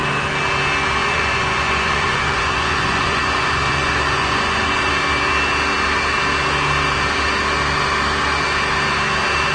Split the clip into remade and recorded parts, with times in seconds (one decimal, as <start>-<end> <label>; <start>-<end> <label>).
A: 0.0-1.0 recorded; 1.0-4.9 remade; 4.9-9.5 recorded